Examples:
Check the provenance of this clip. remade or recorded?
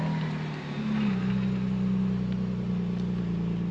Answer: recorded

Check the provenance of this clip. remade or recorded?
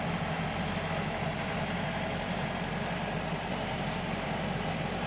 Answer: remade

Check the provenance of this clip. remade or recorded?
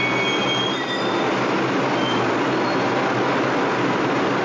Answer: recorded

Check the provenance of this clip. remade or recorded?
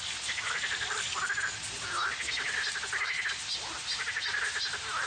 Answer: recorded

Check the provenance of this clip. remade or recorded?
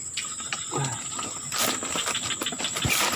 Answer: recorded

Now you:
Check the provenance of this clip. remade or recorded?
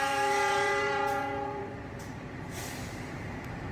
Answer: remade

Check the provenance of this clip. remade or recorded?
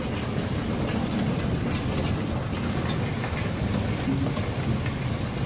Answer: recorded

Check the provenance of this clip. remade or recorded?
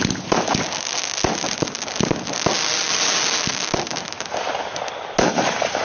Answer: recorded